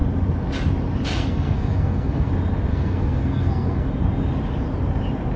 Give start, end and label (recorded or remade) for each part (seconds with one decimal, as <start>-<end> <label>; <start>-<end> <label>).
0.0-1.1 recorded; 1.1-2.3 remade; 2.3-2.7 recorded; 2.7-3.9 remade; 3.9-5.4 recorded